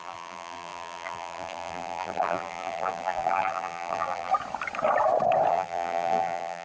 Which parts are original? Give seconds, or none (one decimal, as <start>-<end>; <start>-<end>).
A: 4.3-5.5